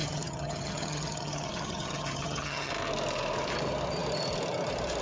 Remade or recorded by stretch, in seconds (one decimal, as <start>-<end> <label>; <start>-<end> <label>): 0.0-2.7 remade; 2.7-5.0 recorded